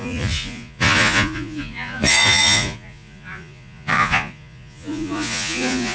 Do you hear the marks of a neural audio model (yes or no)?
yes